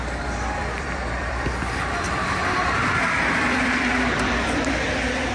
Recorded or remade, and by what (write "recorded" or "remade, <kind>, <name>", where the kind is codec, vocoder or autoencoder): remade, vocoder, BigVGAN v2